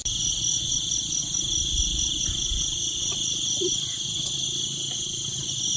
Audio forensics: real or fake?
real